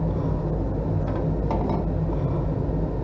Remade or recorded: recorded